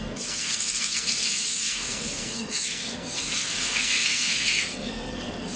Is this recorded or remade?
remade